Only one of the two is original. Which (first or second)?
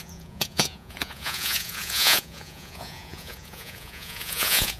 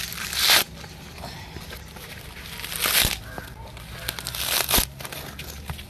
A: second